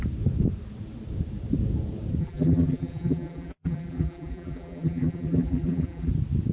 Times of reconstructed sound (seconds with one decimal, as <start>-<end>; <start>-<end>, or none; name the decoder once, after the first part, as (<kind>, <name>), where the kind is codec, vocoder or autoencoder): 2.2-6.1 (vocoder, BigVGAN v2)